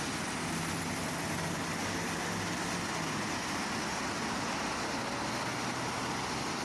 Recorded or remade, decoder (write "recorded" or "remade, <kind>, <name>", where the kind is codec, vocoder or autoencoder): recorded